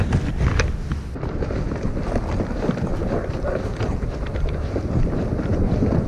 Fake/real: real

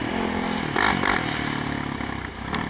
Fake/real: real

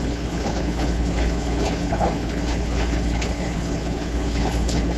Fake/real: fake